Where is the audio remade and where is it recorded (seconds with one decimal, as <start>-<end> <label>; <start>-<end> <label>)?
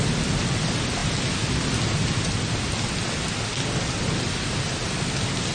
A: 0.0-5.5 recorded